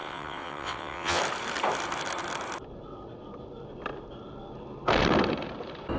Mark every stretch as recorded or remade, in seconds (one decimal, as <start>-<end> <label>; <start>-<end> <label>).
0.0-1.2 remade; 1.2-6.0 recorded